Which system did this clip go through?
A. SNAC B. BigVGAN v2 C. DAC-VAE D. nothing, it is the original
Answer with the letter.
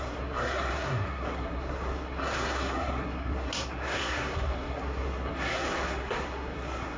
A